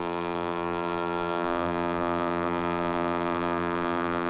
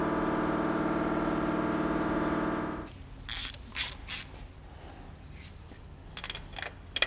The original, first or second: second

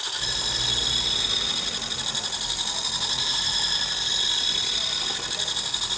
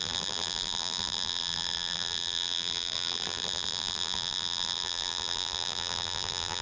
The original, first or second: first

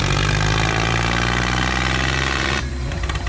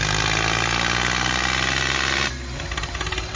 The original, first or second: second